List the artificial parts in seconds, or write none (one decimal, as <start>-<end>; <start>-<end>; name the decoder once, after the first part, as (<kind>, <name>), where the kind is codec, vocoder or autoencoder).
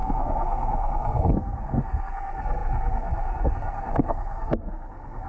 0.0-5.3 (codec, SNAC)